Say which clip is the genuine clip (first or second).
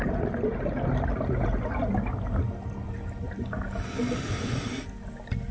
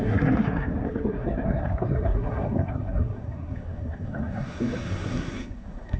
first